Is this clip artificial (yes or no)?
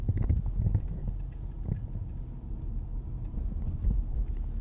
no